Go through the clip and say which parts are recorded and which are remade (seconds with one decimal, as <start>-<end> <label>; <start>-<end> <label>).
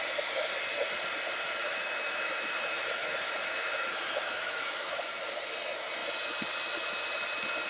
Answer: 0.0-1.6 recorded; 1.6-5.1 remade; 5.1-7.7 recorded